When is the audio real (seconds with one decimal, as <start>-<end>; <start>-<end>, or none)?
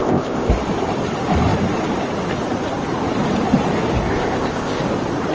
0.5-4.1; 4.8-5.3